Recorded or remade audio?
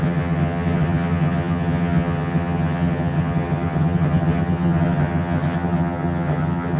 remade